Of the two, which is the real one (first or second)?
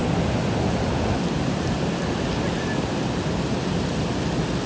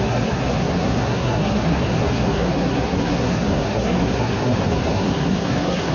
first